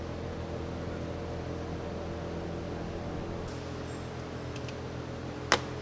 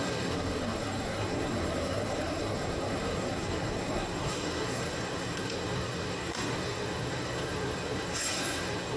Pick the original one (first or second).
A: first